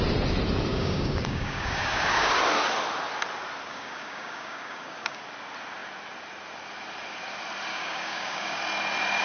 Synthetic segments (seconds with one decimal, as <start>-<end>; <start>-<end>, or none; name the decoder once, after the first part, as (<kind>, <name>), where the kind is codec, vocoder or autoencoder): 0.7-2.4 (codec, DAC); 3.7-5.2; 7.7-8.6